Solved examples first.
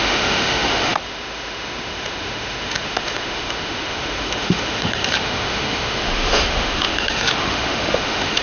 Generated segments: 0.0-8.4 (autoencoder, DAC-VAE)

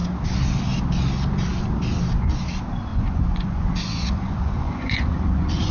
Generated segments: 2.9-5.7 (vocoder, Vocos)

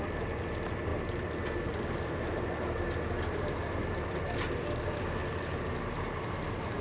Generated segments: none

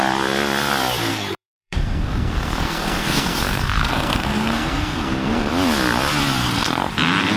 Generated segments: 1.1-5.5 (codec, SNAC); 6.4-6.9

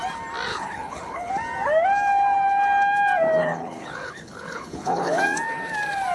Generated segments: 0.5-1.3 (codec, HILCodec); 3.4-5.2

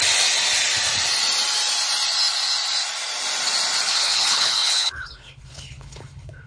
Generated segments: 3.9-6.5 (codec, HILCodec)